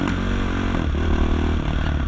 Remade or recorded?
recorded